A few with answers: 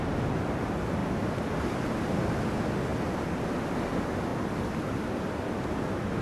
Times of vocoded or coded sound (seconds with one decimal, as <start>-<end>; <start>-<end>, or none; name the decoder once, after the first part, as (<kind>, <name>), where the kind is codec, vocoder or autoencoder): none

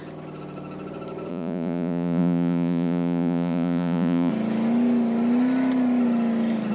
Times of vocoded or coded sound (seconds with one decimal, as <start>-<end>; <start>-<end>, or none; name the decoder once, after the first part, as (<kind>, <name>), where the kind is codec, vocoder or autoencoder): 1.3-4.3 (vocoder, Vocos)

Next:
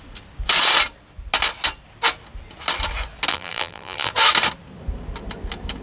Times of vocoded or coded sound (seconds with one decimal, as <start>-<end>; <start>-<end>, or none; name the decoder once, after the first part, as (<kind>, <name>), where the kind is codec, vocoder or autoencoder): 3.3-4.1 (vocoder, BigVGAN v2)